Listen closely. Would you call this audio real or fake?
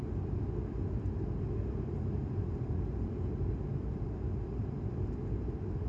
real